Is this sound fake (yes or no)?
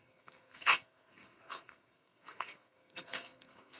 yes